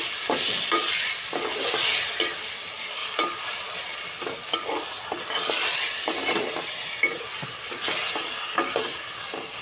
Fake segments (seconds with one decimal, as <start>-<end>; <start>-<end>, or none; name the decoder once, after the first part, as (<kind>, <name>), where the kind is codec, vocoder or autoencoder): none